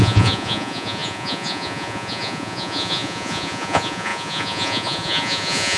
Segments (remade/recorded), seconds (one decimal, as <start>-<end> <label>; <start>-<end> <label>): 0.0-5.8 remade